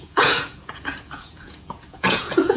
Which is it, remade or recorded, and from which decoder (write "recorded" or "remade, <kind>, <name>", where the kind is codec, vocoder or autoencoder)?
remade, vocoder, Vocos